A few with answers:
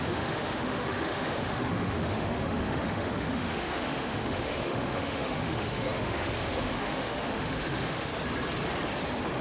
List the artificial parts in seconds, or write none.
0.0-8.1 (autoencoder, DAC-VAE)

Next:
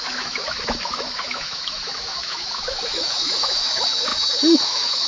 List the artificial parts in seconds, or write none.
0.0-5.1 (autoencoder, DAC-VAE)

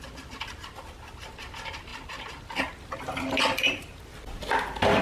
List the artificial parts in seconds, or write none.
none

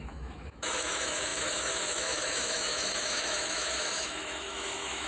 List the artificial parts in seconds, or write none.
0.0-5.1 (autoencoder, DAC-VAE)

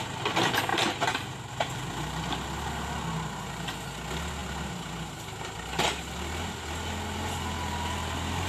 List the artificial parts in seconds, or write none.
none

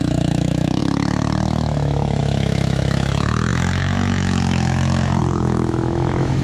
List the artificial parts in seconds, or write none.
0.0-6.4 (autoencoder, DAC-VAE)